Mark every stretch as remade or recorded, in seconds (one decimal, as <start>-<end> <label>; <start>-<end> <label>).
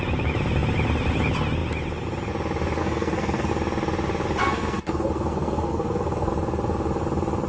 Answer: 0.0-2.8 recorded; 2.8-3.5 remade; 3.5-4.4 recorded; 4.4-6.3 remade; 6.3-7.5 recorded